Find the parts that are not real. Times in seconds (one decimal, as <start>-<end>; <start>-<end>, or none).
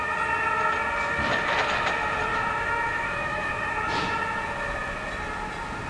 2.3-3.5